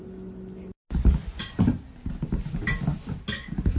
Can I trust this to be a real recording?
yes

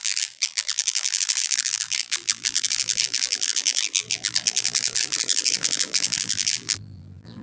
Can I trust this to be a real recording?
no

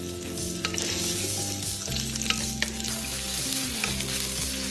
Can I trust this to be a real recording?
yes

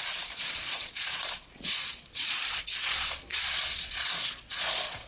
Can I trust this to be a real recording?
no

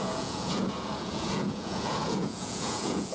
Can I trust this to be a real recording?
no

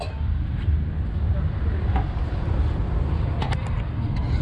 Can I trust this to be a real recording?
yes